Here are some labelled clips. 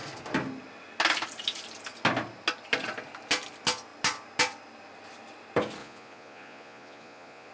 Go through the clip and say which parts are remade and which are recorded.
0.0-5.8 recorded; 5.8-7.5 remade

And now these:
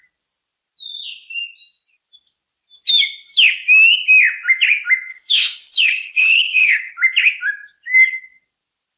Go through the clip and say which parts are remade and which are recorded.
0.0-5.1 recorded; 5.1-6.9 remade; 6.9-9.0 recorded